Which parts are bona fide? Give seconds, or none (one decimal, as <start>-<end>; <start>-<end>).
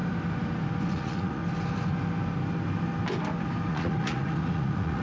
0.0-0.9; 1.4-3.7